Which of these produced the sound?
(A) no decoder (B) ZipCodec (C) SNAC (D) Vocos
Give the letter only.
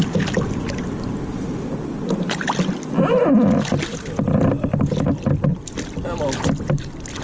A